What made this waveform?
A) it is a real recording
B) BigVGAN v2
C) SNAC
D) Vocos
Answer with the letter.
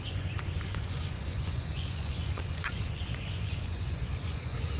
D